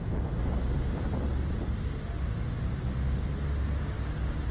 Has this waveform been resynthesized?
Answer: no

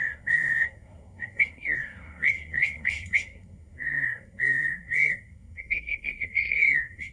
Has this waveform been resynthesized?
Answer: yes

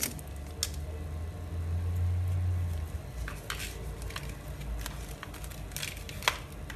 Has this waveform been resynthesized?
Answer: no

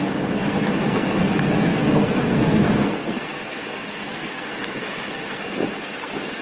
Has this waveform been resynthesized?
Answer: yes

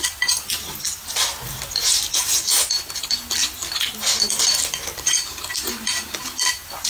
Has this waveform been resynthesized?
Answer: no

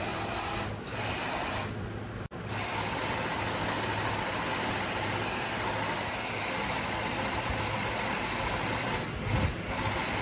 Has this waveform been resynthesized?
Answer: no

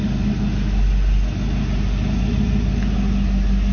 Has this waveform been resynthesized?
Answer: no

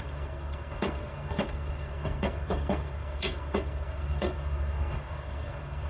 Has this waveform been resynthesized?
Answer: yes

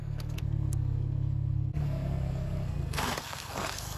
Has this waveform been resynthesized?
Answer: yes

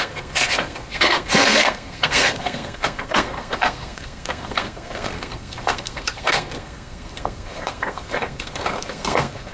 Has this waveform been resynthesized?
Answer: yes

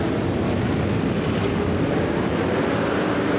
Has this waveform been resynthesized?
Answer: no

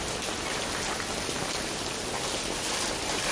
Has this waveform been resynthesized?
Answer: no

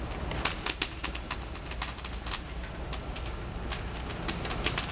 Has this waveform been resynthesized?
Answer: no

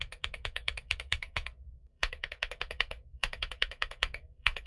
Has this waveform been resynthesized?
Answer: yes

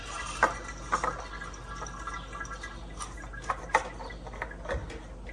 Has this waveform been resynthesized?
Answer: no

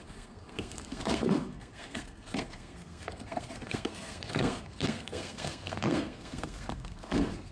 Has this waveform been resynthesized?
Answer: yes